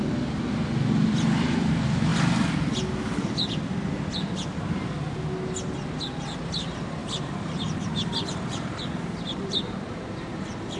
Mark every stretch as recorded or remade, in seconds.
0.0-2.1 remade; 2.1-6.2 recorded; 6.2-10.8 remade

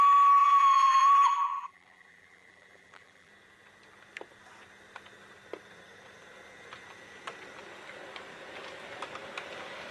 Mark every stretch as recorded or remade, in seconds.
0.0-0.4 recorded; 0.4-3.3 remade; 3.3-9.9 recorded

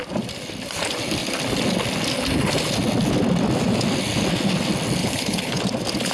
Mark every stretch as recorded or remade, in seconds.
0.0-5.0 recorded; 5.0-5.6 remade; 5.6-6.1 recorded